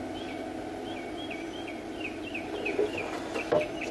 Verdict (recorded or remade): recorded